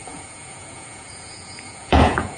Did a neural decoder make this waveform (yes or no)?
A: yes